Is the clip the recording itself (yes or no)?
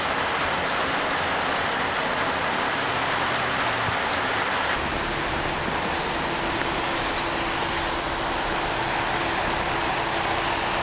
yes